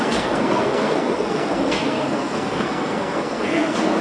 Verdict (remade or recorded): remade